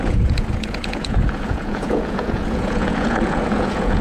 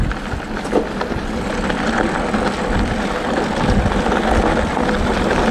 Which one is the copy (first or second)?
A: first